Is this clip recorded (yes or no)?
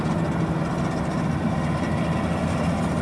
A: yes